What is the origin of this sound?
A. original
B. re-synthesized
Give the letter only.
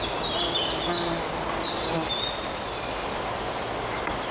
A